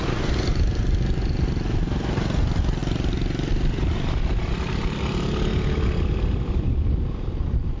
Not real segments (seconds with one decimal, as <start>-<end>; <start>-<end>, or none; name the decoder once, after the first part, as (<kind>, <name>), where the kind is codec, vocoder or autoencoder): 2.8-5.0 (vocoder, BigVGAN v2)